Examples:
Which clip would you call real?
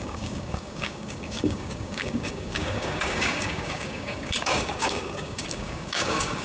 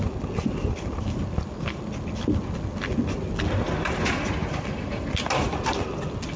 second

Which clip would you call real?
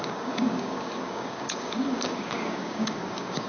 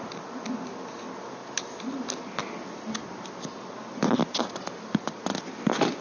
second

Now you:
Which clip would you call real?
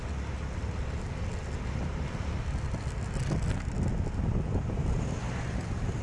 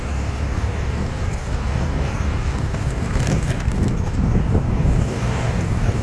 first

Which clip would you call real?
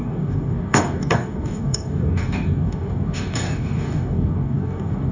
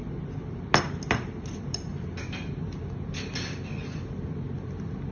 second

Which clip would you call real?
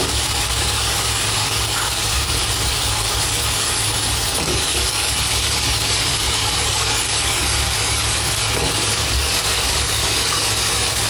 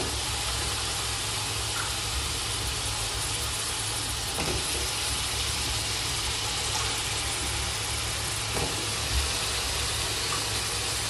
second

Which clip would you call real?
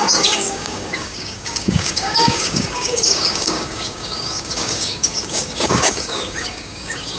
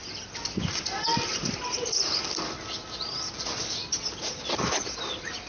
second